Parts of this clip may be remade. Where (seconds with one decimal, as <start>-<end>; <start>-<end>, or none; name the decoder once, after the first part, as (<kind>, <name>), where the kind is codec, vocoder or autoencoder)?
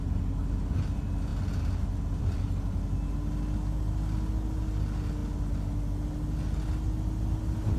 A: none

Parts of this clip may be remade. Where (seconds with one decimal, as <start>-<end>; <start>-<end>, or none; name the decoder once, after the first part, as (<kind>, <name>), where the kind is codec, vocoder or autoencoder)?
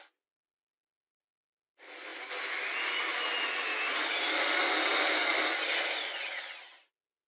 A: none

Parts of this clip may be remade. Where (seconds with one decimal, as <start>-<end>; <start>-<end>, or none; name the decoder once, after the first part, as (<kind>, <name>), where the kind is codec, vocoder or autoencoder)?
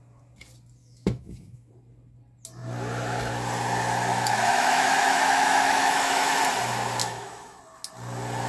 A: 0.8-1.7 (autoencoder, DAC-VAE); 4.1-6.4; 7.0-7.6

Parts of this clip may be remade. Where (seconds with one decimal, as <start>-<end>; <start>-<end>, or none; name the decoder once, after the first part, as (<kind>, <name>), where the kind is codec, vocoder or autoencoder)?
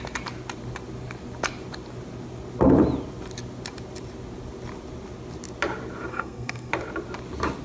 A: 6.1-6.7 (codec, SNAC)